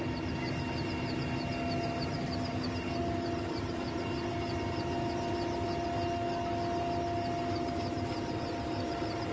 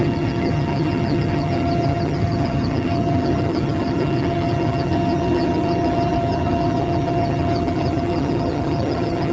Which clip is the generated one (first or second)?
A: second